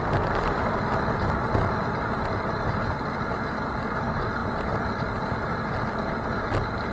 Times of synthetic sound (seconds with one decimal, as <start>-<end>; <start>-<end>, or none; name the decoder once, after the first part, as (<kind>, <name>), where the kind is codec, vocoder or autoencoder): none